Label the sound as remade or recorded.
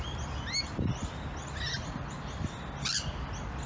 recorded